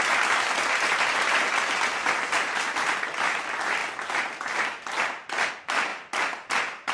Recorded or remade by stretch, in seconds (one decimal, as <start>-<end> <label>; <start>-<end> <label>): 0.0-6.9 recorded